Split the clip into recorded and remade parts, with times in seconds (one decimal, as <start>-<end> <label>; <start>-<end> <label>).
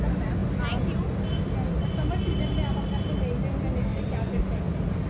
0.0-3.9 recorded; 3.9-4.5 remade; 4.5-5.1 recorded